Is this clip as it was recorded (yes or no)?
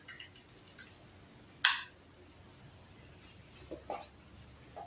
yes